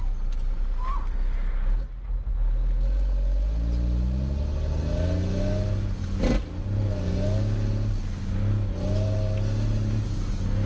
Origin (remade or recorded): recorded